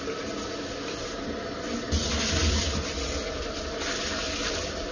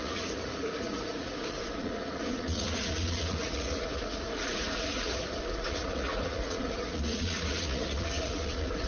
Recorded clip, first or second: first